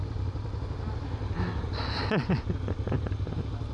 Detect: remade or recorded recorded